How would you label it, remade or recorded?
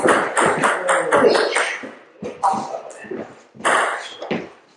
recorded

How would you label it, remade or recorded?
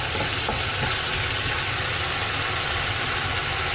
recorded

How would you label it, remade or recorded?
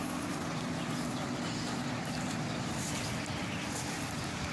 recorded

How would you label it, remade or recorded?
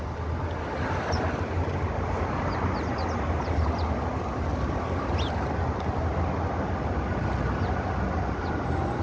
recorded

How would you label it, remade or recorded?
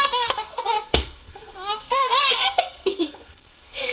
remade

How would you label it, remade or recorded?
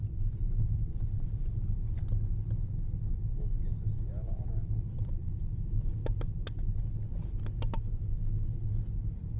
recorded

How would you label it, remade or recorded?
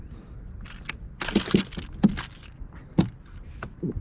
recorded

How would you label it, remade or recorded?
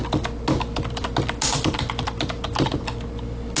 recorded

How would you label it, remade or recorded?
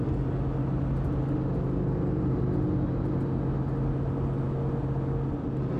recorded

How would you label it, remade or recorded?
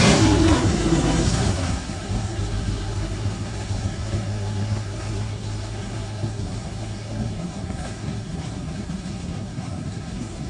remade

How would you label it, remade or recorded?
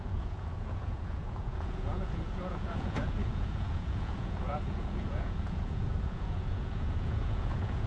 remade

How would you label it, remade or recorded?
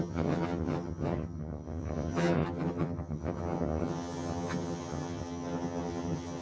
remade